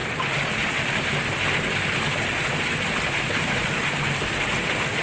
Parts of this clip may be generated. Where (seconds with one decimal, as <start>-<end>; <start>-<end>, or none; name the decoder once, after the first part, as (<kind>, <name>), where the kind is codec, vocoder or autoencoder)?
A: none